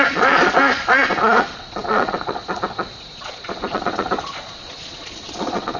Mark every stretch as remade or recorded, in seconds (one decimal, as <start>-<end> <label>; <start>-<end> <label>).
0.0-5.8 remade